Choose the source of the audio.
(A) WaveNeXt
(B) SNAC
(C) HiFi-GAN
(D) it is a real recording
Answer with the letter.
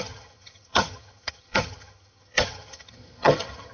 C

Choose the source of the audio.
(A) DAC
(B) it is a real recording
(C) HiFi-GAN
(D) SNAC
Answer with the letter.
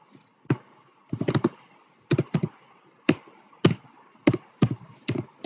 B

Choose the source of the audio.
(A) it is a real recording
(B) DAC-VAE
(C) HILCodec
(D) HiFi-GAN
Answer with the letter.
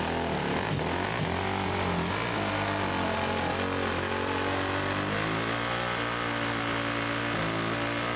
A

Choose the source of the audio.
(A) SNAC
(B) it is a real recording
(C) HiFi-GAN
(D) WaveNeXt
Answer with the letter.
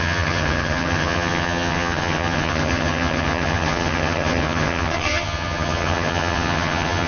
C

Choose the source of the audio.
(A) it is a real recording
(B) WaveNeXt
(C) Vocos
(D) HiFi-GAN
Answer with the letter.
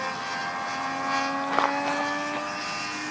A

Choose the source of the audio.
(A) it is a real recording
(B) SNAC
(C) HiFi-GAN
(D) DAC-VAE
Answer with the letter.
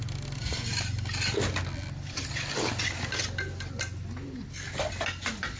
A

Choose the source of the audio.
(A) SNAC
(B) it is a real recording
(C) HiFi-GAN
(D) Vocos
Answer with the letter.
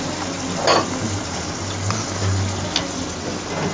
B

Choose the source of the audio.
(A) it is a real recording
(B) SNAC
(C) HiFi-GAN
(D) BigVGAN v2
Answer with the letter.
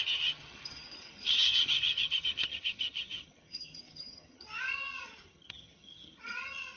C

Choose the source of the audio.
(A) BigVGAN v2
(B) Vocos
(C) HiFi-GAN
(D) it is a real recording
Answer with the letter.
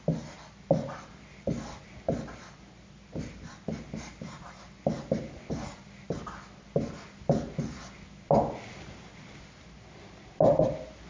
D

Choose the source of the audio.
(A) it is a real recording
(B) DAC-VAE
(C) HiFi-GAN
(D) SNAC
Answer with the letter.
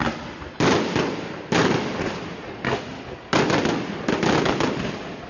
A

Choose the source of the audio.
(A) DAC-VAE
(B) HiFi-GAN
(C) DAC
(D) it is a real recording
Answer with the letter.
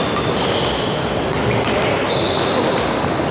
D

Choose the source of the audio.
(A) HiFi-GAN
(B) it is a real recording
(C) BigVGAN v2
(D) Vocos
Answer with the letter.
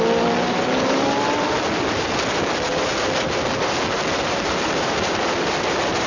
B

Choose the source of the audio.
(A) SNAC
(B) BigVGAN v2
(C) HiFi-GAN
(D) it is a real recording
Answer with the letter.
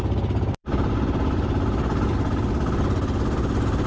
D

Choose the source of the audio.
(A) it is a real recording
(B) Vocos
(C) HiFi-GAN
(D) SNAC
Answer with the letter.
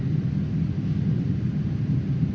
A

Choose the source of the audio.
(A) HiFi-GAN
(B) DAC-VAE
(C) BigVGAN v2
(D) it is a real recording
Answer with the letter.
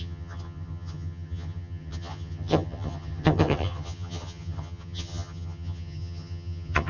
A